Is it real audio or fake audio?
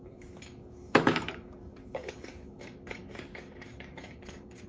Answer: fake